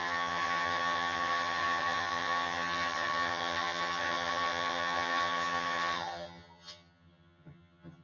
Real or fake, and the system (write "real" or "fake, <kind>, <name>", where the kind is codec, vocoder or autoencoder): fake, vocoder, HiFi-GAN